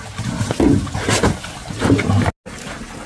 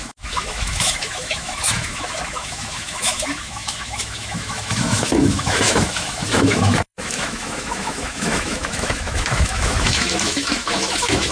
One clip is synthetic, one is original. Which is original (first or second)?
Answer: first